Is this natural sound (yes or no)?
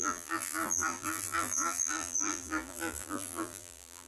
no